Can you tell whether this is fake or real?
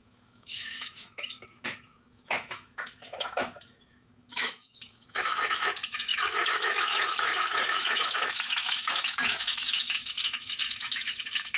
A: fake